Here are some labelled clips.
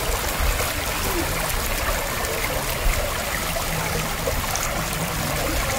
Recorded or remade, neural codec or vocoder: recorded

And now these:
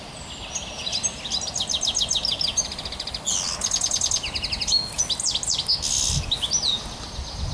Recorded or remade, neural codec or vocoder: recorded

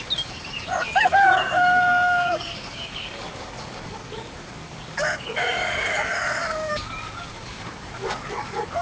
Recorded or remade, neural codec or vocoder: remade, codec, DAC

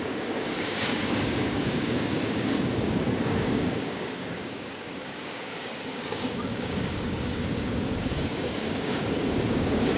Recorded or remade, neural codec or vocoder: remade, codec, DAC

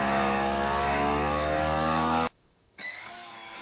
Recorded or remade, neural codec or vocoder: remade, codec, DAC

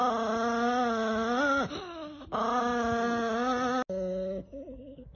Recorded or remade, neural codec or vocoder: recorded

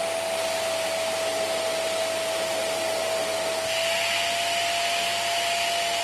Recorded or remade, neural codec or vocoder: recorded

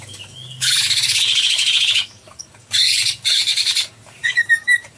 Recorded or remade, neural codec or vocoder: remade, codec, DAC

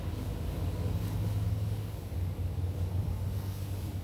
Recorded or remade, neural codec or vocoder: remade, codec, DAC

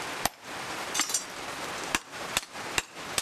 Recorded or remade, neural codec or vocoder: recorded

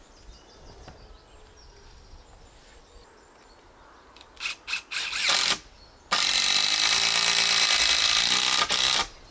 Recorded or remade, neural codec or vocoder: recorded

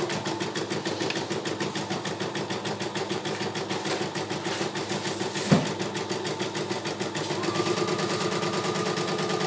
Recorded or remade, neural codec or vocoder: recorded